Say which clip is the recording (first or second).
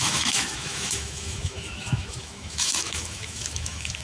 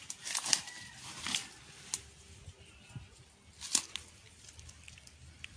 second